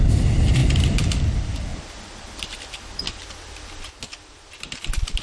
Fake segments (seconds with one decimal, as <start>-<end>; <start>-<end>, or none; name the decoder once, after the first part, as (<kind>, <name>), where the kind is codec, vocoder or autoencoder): 1.7-2.8 (vocoder, BigVGAN v2); 3.9-5.2